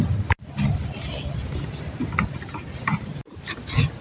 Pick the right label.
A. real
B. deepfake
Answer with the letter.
A